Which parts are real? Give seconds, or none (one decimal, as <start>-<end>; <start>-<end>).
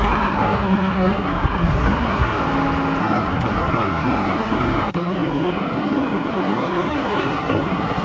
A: 2.4-3.0